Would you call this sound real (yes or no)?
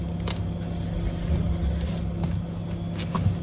yes